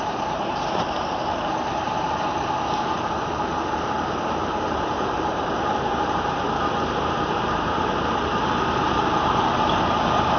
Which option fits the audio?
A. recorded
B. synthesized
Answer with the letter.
B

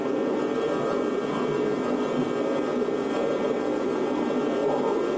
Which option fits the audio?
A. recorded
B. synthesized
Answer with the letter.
A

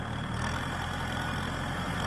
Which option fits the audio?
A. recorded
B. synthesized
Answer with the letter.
A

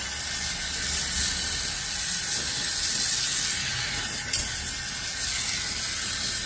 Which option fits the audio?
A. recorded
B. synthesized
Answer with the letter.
A